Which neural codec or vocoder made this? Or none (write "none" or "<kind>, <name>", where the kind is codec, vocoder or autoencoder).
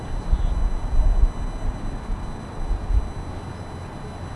none